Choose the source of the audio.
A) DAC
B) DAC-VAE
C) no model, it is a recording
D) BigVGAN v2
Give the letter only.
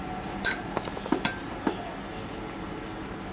C